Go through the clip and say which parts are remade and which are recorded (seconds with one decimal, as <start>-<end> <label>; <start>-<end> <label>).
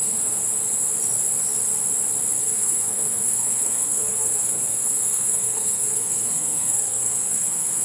0.0-0.4 remade; 0.4-2.4 recorded; 2.4-7.8 remade